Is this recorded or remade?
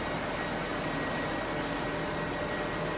recorded